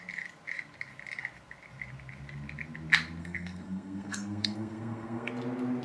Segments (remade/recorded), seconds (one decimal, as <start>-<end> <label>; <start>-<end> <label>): 0.0-3.2 recorded; 3.2-5.3 remade; 5.3-5.8 recorded